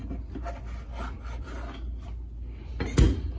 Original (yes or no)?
yes